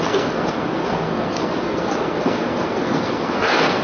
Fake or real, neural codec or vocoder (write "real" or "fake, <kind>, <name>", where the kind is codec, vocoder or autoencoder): fake, codec, SNAC